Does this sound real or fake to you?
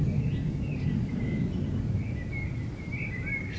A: real